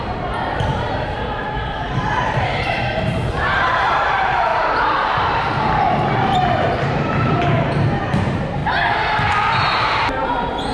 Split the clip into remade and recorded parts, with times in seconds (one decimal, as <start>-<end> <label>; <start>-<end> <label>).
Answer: 0.0-8.6 remade; 8.6-10.1 recorded; 10.1-10.7 remade